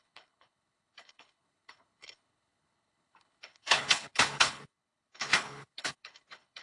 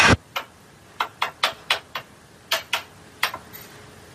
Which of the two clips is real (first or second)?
second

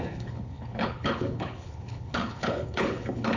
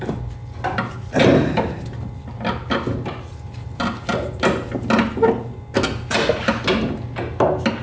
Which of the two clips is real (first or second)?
second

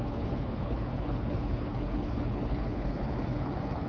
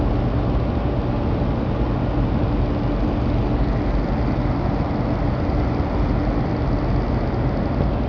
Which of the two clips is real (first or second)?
second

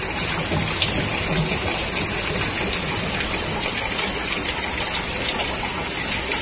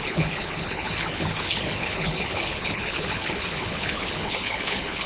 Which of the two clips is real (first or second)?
first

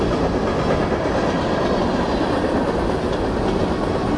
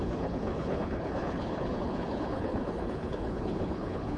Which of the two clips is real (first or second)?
first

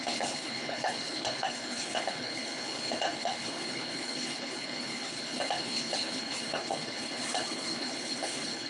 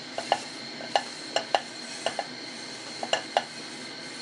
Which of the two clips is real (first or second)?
second